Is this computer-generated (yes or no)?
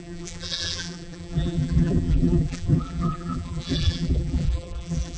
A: yes